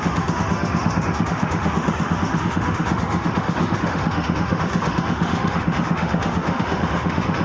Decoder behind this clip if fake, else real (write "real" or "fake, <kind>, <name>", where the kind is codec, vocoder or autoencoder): fake, autoencoder, DAC-VAE